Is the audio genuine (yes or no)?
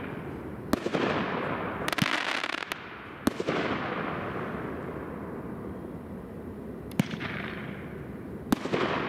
yes